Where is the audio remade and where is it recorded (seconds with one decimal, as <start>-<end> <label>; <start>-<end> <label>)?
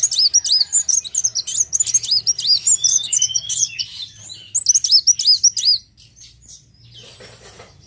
0.0-2.9 recorded; 2.9-3.8 remade; 3.8-7.9 recorded